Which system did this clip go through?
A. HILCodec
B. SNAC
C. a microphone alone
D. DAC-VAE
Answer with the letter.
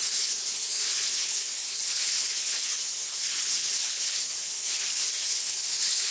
A